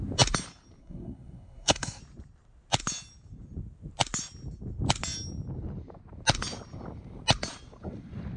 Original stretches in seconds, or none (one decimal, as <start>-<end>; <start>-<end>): 0.0-0.8; 2.0-8.4